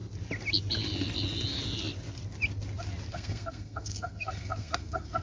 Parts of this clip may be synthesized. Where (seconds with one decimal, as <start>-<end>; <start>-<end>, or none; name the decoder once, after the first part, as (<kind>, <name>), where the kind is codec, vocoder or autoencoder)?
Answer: 3.1-5.2 (codec, SNAC)